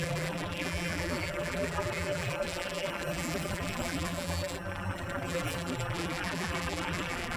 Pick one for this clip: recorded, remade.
remade